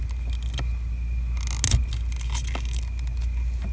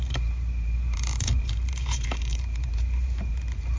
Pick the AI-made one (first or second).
second